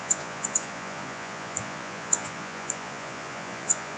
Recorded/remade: remade